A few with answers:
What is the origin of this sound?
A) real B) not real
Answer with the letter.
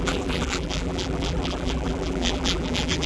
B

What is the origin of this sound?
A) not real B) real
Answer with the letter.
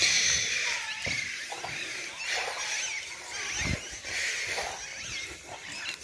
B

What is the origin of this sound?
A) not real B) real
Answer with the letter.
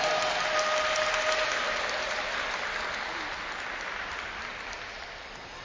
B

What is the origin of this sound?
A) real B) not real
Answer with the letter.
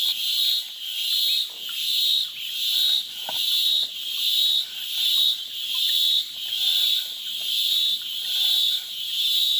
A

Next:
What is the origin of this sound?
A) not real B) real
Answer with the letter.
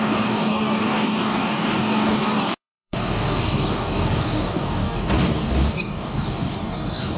A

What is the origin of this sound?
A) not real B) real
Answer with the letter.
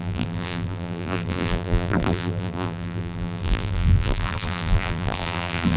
A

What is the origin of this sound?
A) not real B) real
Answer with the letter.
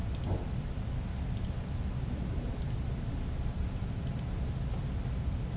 B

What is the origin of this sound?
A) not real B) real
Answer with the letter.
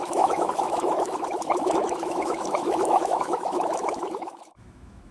A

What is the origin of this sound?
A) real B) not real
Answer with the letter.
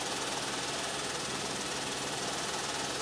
A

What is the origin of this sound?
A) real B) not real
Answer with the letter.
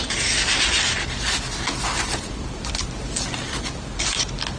A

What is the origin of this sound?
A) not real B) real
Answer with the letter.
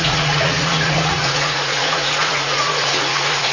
A